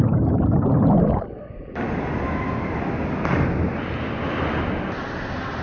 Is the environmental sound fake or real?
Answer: real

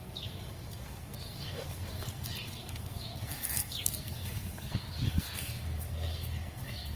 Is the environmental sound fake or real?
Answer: fake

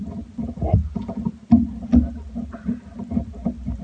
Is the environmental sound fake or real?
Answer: real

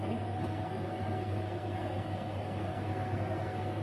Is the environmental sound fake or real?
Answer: fake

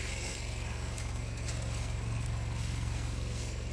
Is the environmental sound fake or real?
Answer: fake